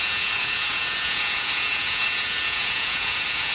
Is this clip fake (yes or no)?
yes